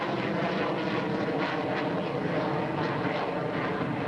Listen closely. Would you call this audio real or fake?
real